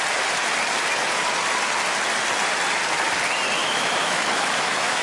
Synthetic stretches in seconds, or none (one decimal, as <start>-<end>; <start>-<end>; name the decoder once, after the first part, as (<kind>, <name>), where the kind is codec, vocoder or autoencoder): 3.6-5.0 (autoencoder, DAC-VAE)